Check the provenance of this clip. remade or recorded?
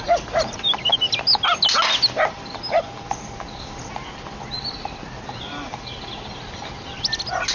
recorded